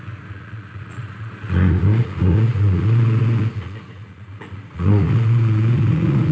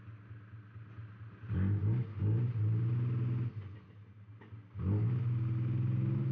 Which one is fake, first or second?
first